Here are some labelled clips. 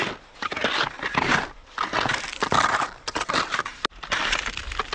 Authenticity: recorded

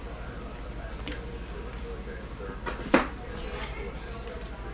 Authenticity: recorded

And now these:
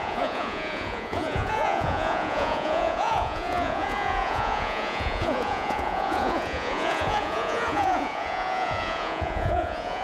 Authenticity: remade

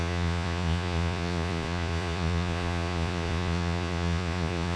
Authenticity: remade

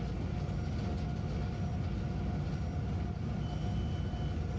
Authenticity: recorded